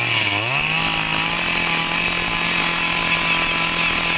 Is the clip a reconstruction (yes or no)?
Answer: no